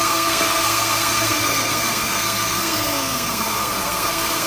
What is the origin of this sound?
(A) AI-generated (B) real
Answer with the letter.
A